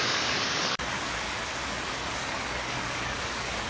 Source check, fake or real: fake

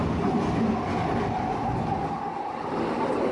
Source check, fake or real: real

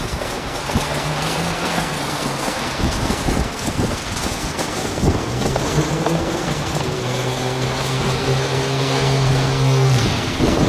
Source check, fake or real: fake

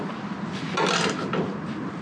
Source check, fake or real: real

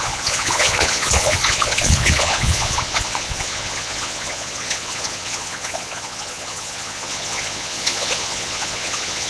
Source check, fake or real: fake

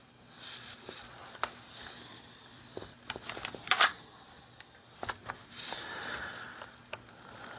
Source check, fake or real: real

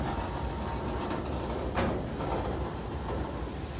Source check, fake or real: real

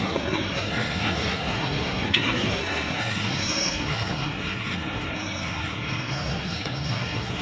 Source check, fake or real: fake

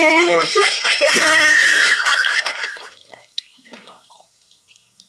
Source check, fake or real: fake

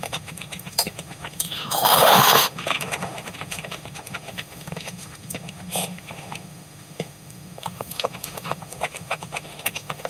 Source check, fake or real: fake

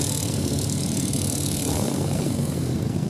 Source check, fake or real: fake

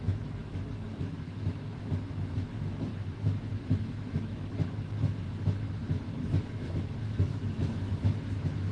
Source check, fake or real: fake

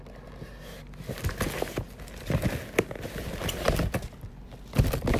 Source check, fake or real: real